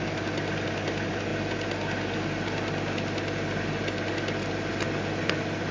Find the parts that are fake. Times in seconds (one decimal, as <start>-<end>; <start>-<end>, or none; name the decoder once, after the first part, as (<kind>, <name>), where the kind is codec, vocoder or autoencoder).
none